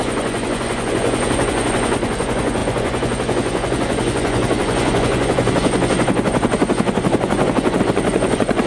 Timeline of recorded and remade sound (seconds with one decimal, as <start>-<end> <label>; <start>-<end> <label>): 0.0-8.7 remade